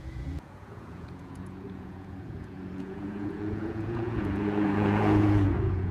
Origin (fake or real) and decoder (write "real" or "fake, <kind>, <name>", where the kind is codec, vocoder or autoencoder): fake, vocoder, Vocos